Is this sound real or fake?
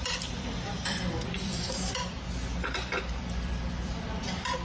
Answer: fake